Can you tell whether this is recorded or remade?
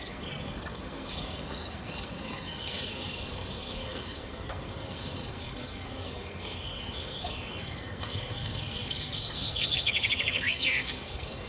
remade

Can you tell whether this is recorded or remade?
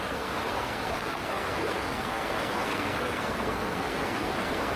remade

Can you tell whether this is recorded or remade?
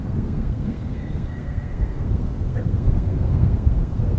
remade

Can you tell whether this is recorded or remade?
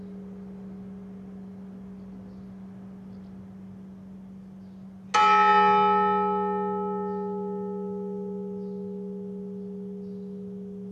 recorded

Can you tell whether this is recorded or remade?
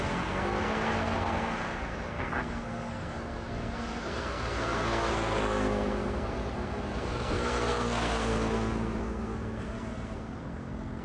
remade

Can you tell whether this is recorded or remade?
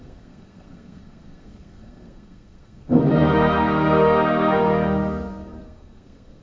remade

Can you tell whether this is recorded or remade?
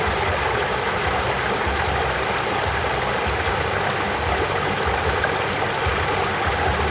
recorded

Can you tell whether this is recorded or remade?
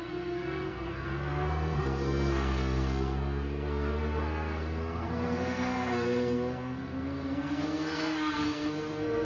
remade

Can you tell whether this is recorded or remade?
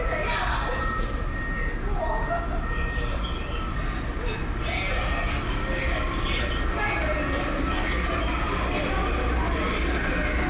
recorded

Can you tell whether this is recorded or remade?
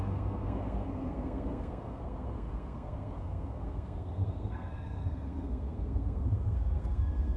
remade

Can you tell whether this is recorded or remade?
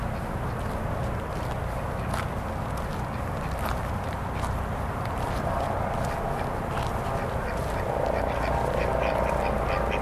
recorded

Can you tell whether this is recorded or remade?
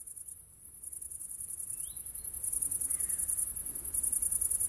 recorded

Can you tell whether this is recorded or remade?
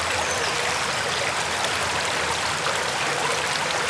recorded